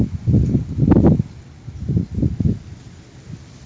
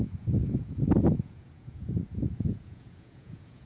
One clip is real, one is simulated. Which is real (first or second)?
first